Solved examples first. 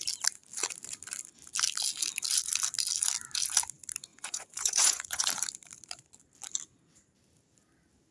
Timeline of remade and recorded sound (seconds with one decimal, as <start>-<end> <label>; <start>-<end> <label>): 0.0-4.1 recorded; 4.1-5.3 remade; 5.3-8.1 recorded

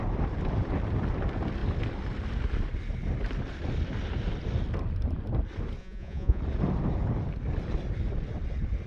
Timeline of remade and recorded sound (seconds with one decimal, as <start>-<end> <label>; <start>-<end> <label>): 0.0-5.8 recorded; 5.8-6.4 remade; 6.4-8.9 recorded

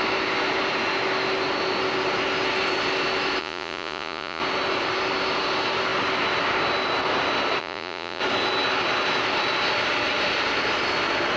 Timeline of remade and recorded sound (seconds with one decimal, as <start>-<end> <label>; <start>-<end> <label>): 0.0-3.4 recorded; 3.4-4.4 remade; 4.4-7.6 recorded; 7.6-8.2 remade; 8.2-11.4 recorded

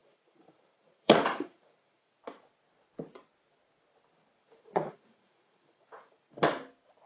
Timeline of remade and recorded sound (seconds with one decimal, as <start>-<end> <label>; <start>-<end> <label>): 0.0-2.2 remade; 2.2-4.4 recorded; 4.4-6.3 remade; 6.3-7.1 recorded

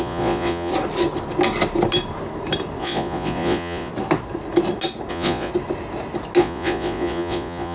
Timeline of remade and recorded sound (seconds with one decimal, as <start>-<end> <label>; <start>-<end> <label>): 0.0-0.7 remade; 0.7-2.8 recorded; 2.8-3.9 remade; 3.9-5.1 recorded; 5.1-5.5 remade; 5.5-6.4 recorded; 6.4-7.7 remade